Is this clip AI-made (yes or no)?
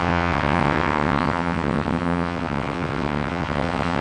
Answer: yes